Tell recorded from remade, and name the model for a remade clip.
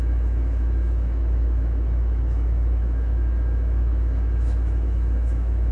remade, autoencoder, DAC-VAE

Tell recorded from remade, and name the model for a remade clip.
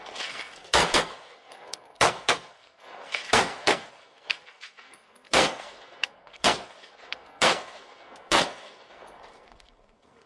remade, codec, SNAC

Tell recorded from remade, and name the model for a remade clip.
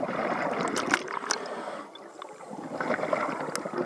recorded